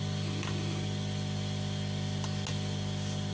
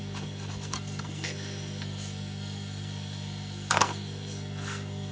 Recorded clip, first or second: first